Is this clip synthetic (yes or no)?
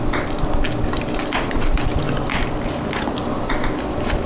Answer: yes